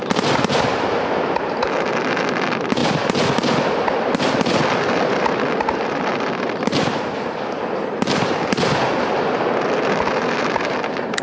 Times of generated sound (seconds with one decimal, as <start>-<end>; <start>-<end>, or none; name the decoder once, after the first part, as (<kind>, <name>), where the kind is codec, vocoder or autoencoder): none